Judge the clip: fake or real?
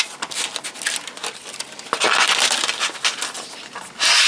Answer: real